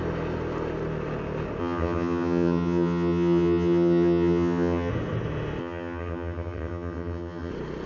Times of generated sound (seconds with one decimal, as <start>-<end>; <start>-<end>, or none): 1.6-4.9; 5.6-7.5